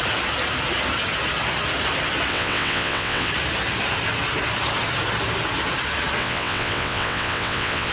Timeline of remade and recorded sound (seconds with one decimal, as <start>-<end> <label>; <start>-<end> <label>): 0.0-2.3 recorded; 2.3-3.3 remade; 3.3-6.2 recorded; 6.2-7.9 remade